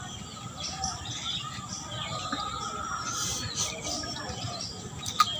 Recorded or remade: recorded